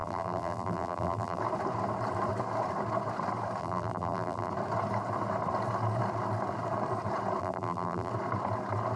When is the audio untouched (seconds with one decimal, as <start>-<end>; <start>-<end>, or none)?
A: 1.4-3.6; 4.5-7.4; 8.1-9.0